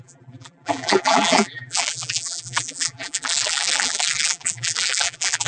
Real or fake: fake